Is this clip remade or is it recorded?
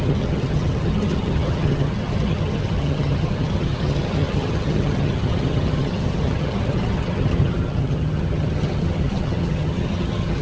remade